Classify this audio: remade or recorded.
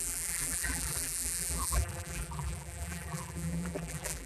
remade